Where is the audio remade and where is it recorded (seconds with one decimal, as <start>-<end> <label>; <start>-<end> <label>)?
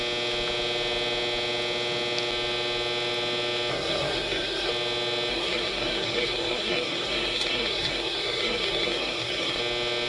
0.0-3.7 recorded; 3.7-4.7 remade; 4.7-5.3 recorded; 5.3-9.6 remade; 9.6-10.1 recorded